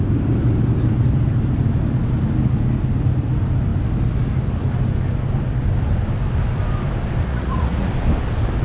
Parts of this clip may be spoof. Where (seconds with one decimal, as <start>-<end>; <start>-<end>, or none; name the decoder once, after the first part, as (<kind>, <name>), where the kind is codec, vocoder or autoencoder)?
7.3-7.9 (vocoder, Vocos)